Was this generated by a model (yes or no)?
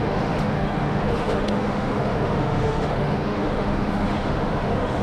yes